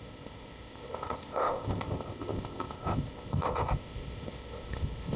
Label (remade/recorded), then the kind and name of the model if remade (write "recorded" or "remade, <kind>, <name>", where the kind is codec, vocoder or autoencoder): remade, codec, ZipCodec